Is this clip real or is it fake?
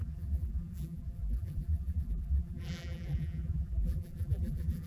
fake